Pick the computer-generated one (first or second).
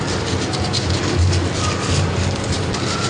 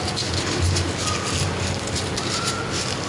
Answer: first